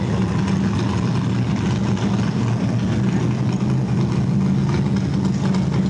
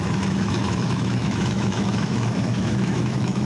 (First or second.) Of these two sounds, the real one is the first